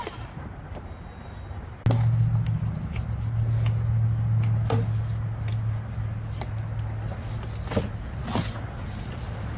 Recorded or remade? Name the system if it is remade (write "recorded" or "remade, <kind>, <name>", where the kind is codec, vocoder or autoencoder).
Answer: recorded